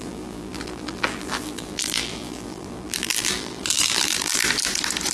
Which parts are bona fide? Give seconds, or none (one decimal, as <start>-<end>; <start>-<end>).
4.4-5.1